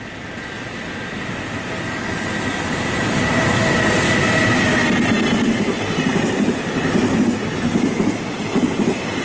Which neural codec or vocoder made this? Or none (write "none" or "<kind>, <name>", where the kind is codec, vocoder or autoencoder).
none